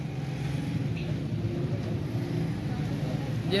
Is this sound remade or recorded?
recorded